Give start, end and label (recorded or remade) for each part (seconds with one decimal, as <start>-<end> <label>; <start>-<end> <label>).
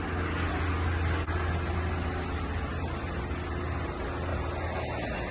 0.0-5.3 recorded